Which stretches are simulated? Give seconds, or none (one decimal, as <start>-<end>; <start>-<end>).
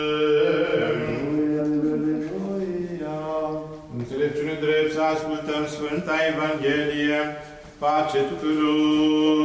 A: none